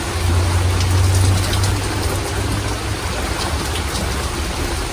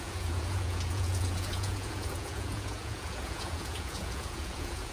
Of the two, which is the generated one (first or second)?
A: second